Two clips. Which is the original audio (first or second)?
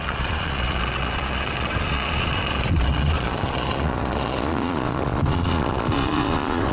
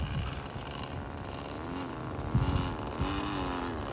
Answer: second